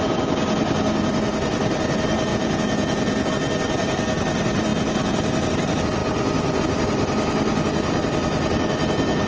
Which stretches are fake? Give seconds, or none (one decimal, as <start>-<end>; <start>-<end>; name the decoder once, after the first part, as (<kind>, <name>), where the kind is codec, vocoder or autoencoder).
2.3-3.3 (vocoder, Vocos)